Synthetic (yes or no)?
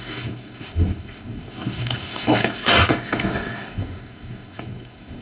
yes